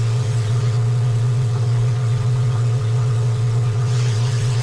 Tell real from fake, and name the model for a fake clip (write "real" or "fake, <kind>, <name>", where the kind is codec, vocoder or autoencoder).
fake, vocoder, WaveNeXt